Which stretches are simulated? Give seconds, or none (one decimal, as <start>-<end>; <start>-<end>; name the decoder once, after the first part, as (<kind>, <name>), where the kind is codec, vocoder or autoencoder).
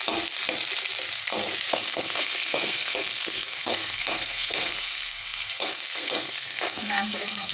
1.7-7.5 (codec, SNAC)